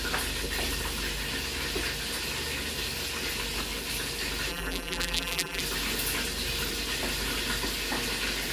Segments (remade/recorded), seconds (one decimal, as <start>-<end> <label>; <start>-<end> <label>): 0.0-4.5 recorded; 4.5-5.6 remade; 5.6-8.5 recorded